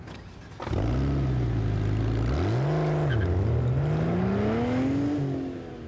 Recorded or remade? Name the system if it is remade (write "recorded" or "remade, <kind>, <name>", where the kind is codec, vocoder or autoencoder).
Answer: recorded